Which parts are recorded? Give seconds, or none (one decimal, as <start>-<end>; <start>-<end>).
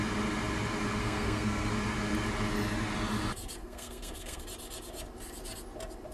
0.0-1.0; 1.7-3.6; 4.4-6.1